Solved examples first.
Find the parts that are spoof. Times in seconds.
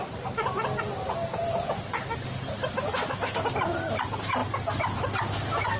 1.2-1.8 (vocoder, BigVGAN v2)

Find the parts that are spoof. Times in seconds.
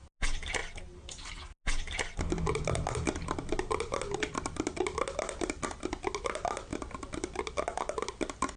none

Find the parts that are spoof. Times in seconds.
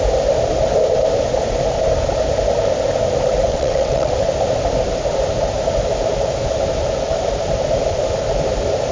3.5-4.1 (vocoder, WaveNeXt)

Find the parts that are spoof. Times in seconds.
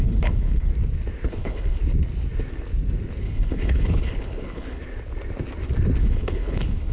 0.0-0.7 (codec, HILCodec); 1.3-1.8; 3.2-4.8; 6.0-6.9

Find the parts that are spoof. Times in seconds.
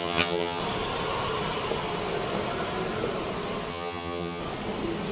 0.0-0.6 (vocoder, HiFi-GAN); 3.7-4.4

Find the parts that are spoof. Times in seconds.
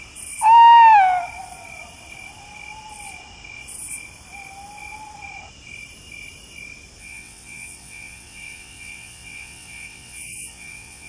7.0-11.1 (vocoder, WaveNeXt)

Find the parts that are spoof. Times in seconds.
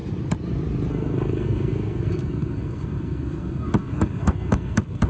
0.9-5.1 (codec, SNAC)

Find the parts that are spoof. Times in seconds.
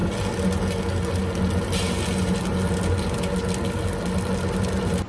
none